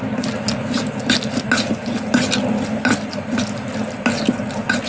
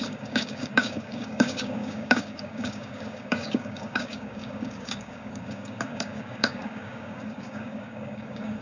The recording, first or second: first